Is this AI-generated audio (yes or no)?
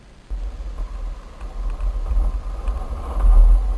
no